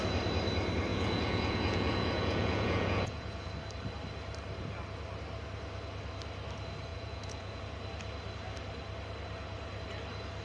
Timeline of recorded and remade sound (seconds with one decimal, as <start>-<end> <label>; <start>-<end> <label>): 0.0-0.9 recorded; 0.9-3.5 remade; 3.5-6.9 recorded; 6.9-7.6 remade; 7.6-10.4 recorded